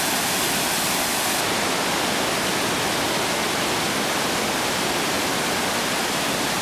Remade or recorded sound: recorded